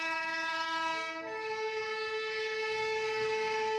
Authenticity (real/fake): fake